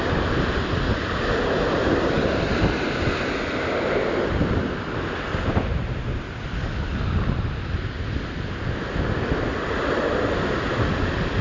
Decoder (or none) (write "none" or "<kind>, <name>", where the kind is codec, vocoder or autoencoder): none